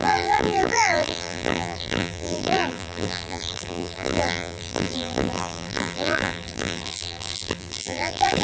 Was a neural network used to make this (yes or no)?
yes